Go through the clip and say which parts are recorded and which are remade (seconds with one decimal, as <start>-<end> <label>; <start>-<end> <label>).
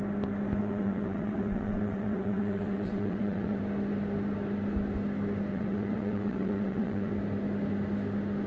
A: 0.0-0.6 recorded; 0.6-3.6 remade; 3.6-5.5 recorded; 5.5-7.1 remade; 7.1-8.5 recorded